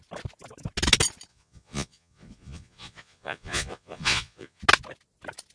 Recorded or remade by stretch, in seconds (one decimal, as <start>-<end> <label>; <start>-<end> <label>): 0.0-1.3 recorded; 1.3-4.6 remade; 4.6-5.5 recorded